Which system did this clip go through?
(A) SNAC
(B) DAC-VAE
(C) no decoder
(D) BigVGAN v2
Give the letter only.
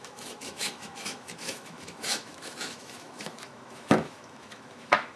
B